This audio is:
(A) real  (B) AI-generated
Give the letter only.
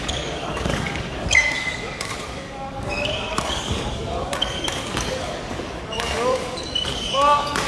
B